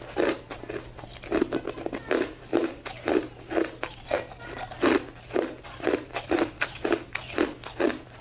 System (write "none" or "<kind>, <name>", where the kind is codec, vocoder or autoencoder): none